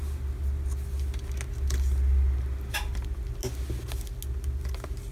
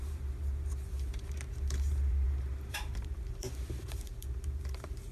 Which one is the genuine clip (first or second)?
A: first